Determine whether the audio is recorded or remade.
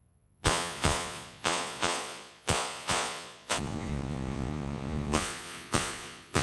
remade